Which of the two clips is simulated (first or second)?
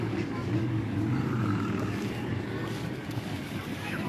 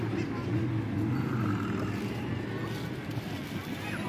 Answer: first